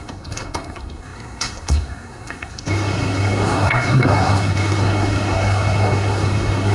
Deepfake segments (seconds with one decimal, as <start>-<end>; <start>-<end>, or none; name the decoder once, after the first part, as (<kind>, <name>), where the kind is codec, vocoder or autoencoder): 0.0-6.7 (codec, SNAC)